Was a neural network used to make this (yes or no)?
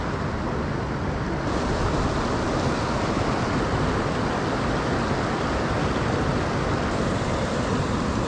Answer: no